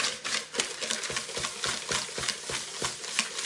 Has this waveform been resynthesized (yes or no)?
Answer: no